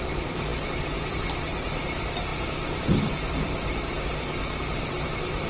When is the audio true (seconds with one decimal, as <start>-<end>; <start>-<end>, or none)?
4.1-4.8